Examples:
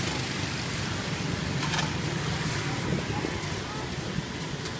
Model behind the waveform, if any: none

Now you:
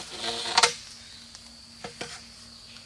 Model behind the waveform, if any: none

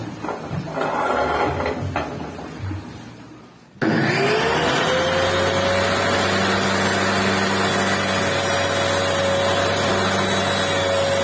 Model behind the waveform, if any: none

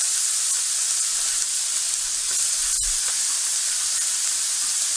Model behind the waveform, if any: none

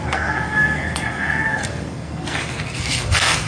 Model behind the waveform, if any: codec, SNAC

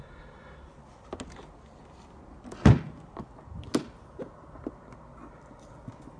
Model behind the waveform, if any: none